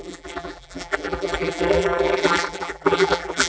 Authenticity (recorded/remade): remade